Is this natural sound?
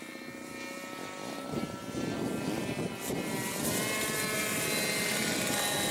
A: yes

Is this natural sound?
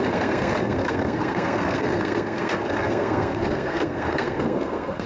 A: no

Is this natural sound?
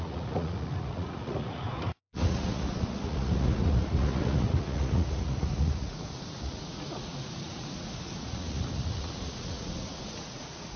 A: no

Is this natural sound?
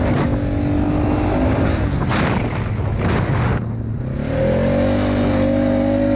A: yes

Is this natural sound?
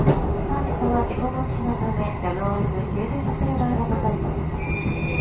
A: yes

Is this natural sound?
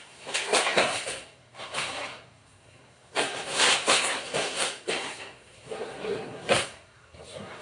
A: no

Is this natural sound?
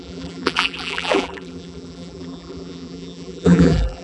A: no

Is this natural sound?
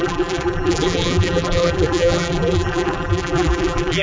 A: no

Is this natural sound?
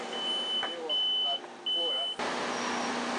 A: yes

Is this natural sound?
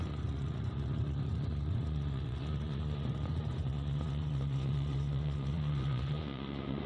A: no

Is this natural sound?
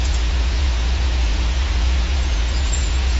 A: no